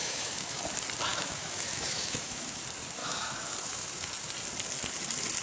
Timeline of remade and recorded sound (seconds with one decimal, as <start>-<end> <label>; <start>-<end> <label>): 0.0-0.6 remade; 0.6-1.1 recorded; 1.1-2.6 remade; 2.6-3.0 recorded; 3.0-4.1 remade; 4.1-5.4 recorded